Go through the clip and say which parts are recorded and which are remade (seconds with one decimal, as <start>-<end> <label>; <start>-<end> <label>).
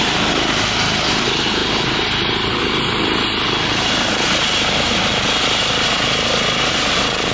0.0-7.3 recorded